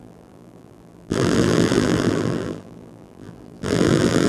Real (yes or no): no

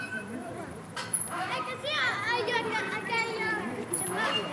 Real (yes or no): no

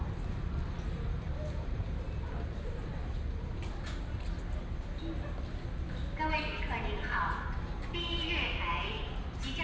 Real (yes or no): yes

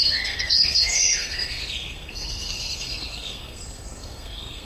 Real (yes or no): no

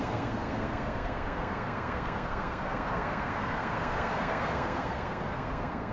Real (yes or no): no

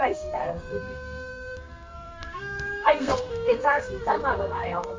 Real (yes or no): no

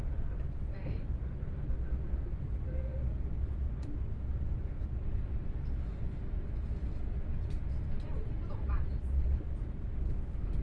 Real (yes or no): yes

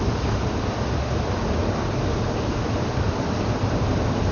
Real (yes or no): yes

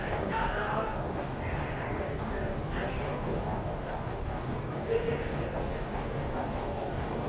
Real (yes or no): no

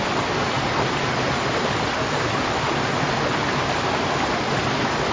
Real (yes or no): yes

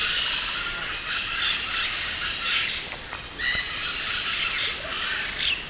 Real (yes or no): yes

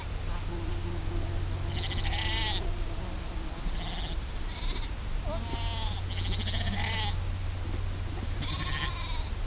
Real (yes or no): yes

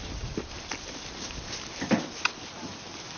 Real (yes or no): yes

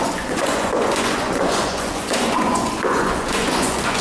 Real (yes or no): no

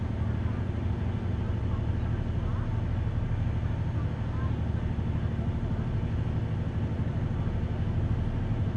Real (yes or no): yes